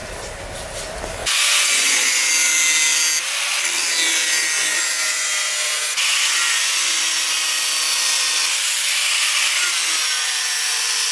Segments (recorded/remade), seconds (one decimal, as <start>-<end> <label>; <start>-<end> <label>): 0.0-1.2 recorded; 1.2-2.3 remade; 2.3-4.6 recorded; 4.6-7.0 remade; 7.0-11.1 recorded